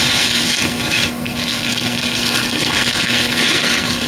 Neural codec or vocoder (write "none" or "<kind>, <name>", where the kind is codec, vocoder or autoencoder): codec, SNAC